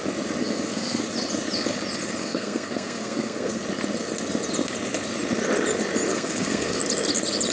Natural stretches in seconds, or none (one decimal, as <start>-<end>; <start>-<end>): 0.0-0.4; 1.0-2.2; 3.6-6.1; 6.8-7.5